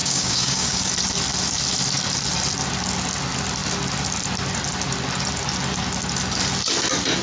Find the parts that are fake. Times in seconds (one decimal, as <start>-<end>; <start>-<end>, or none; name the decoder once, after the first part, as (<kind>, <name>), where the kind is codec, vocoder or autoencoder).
0.0-0.9 (codec, DAC)